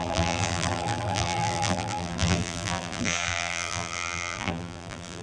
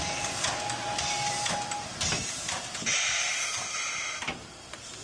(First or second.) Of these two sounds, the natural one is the second